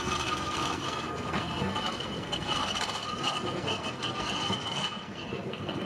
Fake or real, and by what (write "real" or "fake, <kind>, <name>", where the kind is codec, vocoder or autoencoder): fake, codec, SNAC